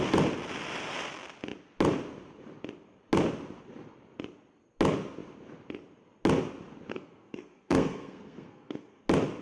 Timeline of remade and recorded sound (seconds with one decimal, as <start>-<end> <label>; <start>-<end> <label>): 0.0-6.9 recorded; 6.9-9.0 remade; 9.0-9.4 recorded